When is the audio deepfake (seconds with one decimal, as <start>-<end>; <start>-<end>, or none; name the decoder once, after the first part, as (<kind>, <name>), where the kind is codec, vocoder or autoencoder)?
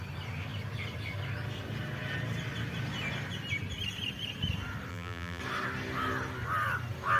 4.9-5.4 (vocoder, BigVGAN v2)